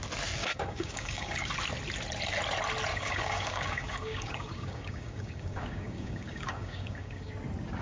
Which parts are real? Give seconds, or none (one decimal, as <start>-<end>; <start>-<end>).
0.0-0.4; 1.5-2.9; 7.3-7.8